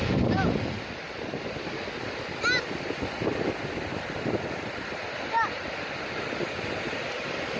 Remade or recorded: recorded